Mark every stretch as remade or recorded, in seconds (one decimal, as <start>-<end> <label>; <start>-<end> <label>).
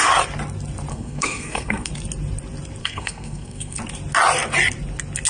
0.0-0.9 recorded; 0.9-1.9 remade; 1.9-2.8 recorded; 2.8-3.8 remade; 3.8-5.3 recorded